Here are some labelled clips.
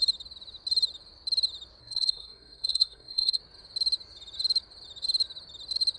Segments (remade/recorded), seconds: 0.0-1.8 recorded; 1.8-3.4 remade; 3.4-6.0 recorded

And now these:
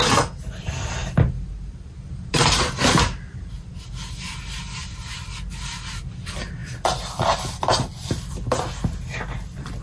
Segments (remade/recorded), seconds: 0.0-9.8 recorded

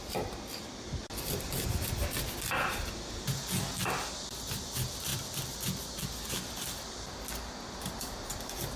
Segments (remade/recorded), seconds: 0.0-8.8 recorded

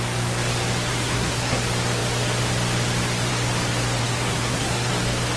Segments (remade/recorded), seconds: 0.0-0.9 recorded; 0.9-1.6 remade; 1.6-4.0 recorded; 4.0-4.9 remade; 4.9-5.4 recorded